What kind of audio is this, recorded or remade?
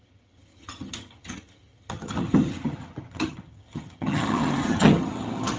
remade